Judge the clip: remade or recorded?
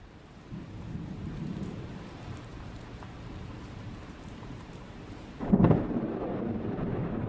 remade